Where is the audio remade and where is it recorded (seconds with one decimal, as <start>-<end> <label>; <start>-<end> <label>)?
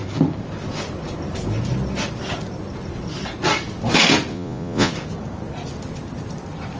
0.0-4.3 recorded; 4.3-4.9 remade; 4.9-6.8 recorded